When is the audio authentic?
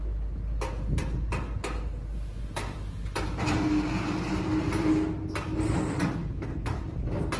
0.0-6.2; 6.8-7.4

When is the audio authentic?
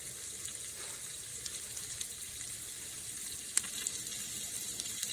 0.0-5.1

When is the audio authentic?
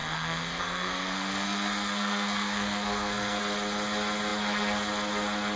3.4-5.6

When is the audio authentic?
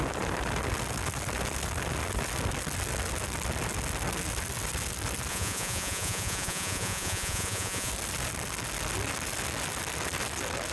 0.0-5.3; 7.9-10.7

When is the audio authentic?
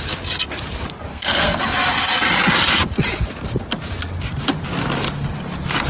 0.0-1.1; 1.6-5.9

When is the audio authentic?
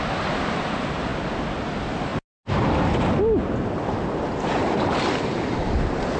0.0-6.2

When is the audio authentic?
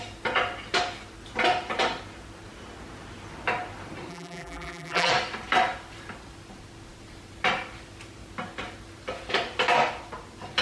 0.0-4.1; 5.1-10.6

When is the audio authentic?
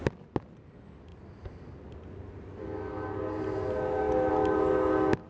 0.0-5.3